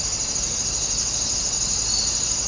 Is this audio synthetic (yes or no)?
no